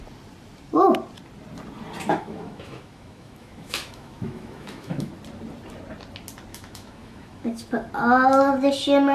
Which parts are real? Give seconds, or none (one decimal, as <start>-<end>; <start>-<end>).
0.0-2.1; 5.1-6.5; 7.9-9.1